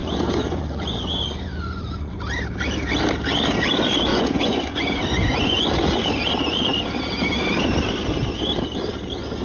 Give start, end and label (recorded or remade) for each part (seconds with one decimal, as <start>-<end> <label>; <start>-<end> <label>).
0.0-2.2 remade; 2.2-4.1 recorded; 4.1-5.7 remade; 5.7-9.4 recorded